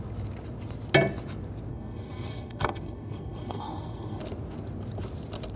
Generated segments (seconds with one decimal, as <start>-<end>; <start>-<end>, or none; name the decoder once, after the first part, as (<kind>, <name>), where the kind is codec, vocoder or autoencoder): 1.7-4.2 (codec, SNAC)